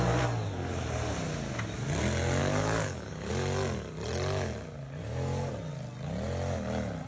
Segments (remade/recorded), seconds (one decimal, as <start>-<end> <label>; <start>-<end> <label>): 0.0-2.4 recorded; 2.4-3.3 remade; 3.3-5.0 recorded; 5.0-5.5 remade; 5.5-7.1 recorded